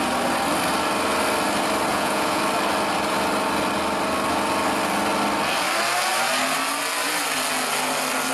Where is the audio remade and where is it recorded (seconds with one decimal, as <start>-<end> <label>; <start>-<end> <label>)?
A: 0.0-1.9 recorded; 1.9-2.4 remade; 2.4-8.3 recorded